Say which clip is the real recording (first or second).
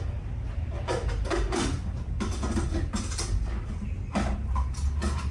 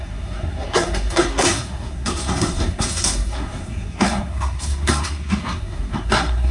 first